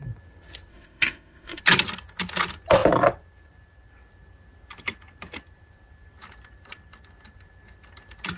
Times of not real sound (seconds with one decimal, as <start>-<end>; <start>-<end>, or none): 0.7-1.6